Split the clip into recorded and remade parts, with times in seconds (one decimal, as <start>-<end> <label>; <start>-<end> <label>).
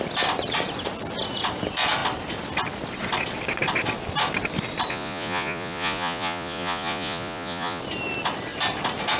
0.0-4.9 recorded; 4.9-7.8 remade; 7.8-9.2 recorded